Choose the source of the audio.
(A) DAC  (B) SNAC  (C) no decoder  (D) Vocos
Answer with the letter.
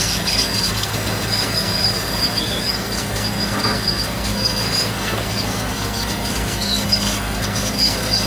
B